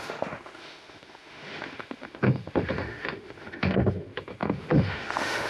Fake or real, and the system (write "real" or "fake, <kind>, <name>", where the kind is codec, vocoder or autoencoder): fake, autoencoder, DAC-VAE